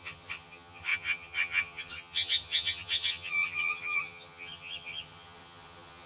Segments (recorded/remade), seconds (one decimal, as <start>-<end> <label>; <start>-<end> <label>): 0.0-6.1 remade